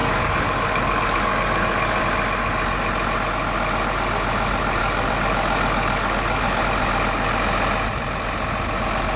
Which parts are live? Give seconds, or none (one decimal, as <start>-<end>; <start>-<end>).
2.0-4.8; 6.6-9.2